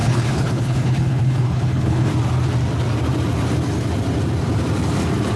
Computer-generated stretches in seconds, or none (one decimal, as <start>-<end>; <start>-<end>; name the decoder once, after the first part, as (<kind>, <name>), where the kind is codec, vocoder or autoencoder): 0.0-2.1 (codec, HILCodec)